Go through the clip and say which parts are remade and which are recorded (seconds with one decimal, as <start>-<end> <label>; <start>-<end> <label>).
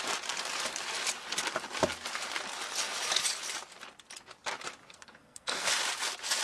0.0-4.8 recorded; 4.8-5.7 remade; 5.7-6.4 recorded